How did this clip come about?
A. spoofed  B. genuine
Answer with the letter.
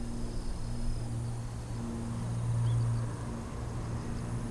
B